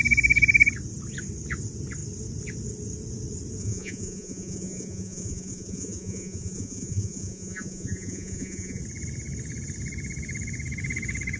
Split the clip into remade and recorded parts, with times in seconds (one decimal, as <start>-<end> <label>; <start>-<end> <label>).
0.0-3.6 recorded; 3.6-8.8 remade; 8.8-11.4 recorded